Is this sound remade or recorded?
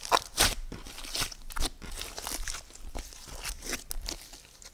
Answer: recorded